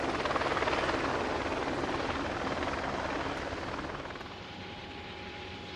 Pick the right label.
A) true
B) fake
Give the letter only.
A